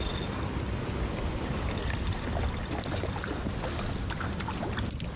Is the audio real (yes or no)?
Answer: yes